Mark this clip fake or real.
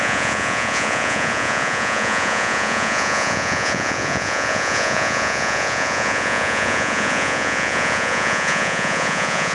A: fake